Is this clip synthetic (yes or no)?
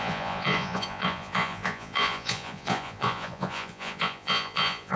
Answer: yes